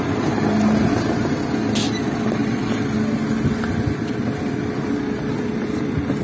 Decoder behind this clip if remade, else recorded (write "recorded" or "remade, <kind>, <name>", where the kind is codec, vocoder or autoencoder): recorded